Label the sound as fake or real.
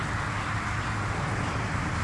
real